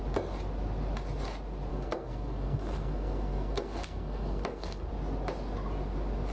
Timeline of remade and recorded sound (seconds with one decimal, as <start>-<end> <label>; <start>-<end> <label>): 0.0-1.7 recorded; 1.7-4.9 remade; 4.9-6.3 recorded